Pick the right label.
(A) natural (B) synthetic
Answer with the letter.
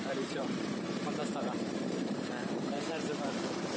B